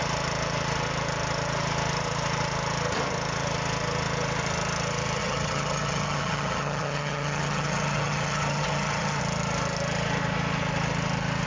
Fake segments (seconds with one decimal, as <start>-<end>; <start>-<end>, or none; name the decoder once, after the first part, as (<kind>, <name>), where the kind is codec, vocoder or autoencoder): 5.2-9.2 (vocoder, HiFi-GAN)